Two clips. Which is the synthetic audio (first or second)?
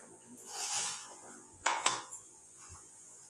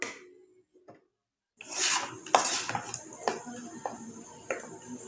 first